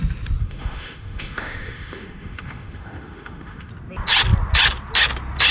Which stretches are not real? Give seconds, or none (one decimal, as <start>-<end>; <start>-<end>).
0.4-3.7